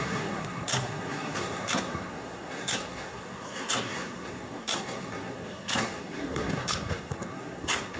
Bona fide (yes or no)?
no